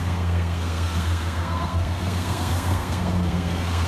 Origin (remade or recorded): remade